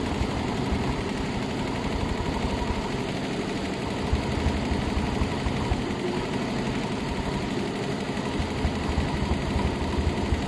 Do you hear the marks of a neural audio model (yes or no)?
no